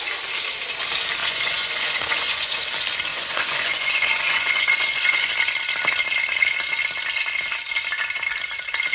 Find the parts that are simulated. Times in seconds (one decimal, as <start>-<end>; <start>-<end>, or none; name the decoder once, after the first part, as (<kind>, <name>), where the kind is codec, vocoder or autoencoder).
1.2-2.6 (vocoder, Vocos); 3.1-5.3